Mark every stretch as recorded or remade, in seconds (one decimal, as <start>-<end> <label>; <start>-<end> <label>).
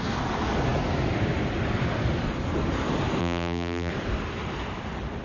0.0-3.2 recorded; 3.2-3.9 remade; 3.9-5.2 recorded